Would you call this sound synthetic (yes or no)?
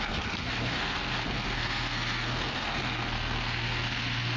yes